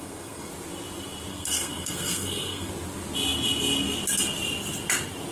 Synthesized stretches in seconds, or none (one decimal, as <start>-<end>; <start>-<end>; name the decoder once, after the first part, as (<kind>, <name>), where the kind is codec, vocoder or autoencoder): 0.0-0.5 (codec, SNAC); 1.3-2.7